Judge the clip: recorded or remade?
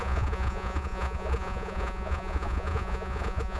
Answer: remade